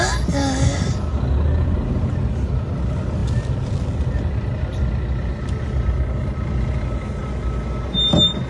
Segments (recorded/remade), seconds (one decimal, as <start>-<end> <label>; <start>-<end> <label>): 0.0-8.5 recorded